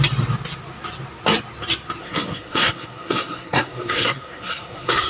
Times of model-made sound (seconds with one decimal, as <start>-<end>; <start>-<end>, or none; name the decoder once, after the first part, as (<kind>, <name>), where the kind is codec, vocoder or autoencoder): 2.0-5.1 (codec, SNAC)